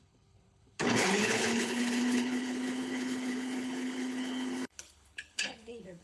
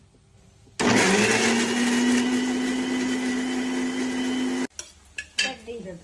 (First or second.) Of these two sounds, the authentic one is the second